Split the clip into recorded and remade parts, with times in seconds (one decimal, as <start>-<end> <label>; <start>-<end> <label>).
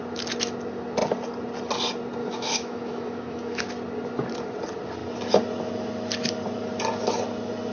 0.0-2.2 recorded; 2.2-3.7 remade; 3.7-7.7 recorded